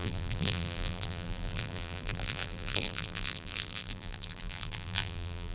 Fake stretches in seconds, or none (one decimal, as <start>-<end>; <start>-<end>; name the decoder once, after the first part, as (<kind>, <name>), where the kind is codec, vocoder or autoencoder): 0.0-5.5 (vocoder, BigVGAN v2)